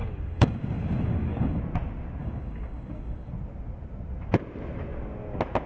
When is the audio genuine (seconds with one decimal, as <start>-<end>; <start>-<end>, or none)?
1.6-2.2; 3.3-5.7